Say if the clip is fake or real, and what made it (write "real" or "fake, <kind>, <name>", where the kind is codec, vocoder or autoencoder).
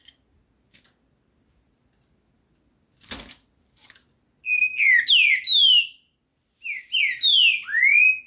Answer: real